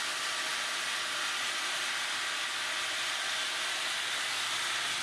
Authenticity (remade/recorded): recorded